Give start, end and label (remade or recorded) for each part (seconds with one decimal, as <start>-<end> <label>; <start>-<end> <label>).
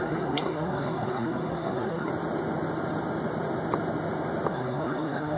0.0-2.1 remade; 2.1-4.5 recorded; 4.5-5.4 remade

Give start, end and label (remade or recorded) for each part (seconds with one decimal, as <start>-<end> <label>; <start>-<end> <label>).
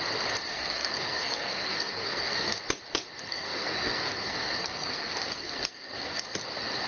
0.0-0.5 recorded; 0.5-2.6 remade; 2.6-3.3 recorded; 3.3-6.2 remade; 6.2-6.9 recorded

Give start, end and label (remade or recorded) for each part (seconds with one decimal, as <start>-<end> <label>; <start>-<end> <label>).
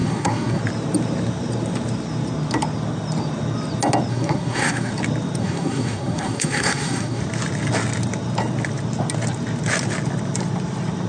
0.0-0.6 remade; 0.6-4.1 recorded; 4.1-4.9 remade; 4.9-5.4 recorded; 5.4-7.2 remade; 7.2-11.1 recorded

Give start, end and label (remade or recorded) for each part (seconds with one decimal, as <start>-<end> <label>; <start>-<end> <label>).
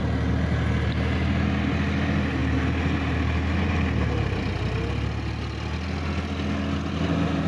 0.0-7.5 recorded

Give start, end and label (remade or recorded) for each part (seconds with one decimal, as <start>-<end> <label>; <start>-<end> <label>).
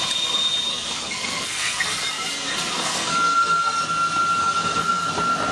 0.0-0.7 recorded; 0.7-2.0 remade; 2.0-2.5 recorded; 2.5-3.8 remade; 3.8-4.4 recorded; 4.4-5.1 remade; 5.1-5.5 recorded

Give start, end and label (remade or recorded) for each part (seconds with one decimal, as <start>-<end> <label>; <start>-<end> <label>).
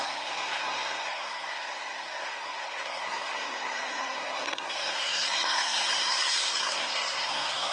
0.0-7.7 remade